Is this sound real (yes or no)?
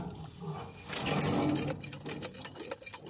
yes